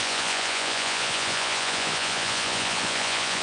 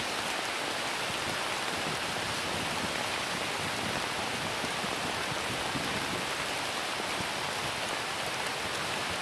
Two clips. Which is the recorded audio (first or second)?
second